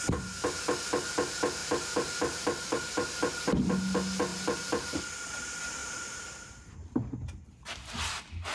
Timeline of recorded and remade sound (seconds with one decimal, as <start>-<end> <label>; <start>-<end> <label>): 0.0-1.6 recorded; 1.6-3.6 remade; 3.6-4.3 recorded; 4.3-5.0 remade; 5.0-5.8 recorded; 5.8-7.4 remade; 7.4-8.5 recorded